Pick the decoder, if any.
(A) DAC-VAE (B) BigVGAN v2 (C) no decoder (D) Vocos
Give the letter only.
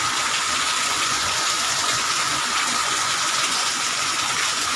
D